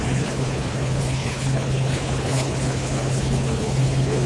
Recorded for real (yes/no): no